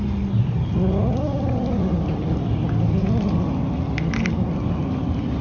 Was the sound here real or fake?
real